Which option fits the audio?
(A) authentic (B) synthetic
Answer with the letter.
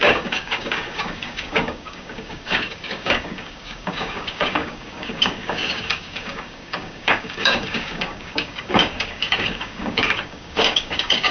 B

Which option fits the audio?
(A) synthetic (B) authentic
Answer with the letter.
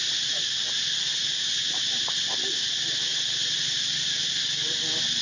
B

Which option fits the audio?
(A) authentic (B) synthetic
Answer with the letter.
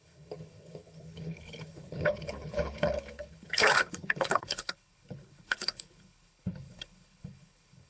B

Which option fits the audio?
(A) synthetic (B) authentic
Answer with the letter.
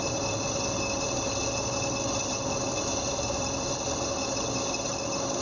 B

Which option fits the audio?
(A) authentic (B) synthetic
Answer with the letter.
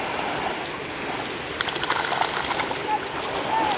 A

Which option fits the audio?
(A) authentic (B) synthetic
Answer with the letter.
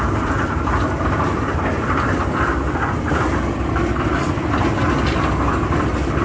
A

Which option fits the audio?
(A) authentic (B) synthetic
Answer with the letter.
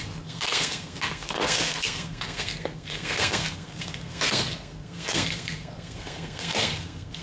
B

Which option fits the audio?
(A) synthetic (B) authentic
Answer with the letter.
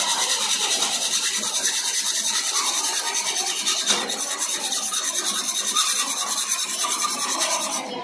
B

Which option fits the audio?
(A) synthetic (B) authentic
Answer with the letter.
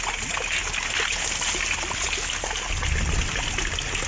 B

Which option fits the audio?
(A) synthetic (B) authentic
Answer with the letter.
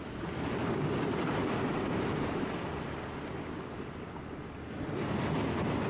B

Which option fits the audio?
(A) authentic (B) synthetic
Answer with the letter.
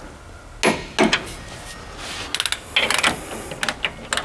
A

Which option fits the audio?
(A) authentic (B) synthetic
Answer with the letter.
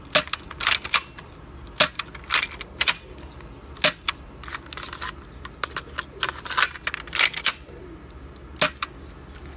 A